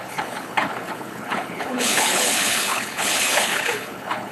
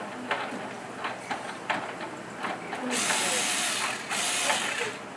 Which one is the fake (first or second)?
first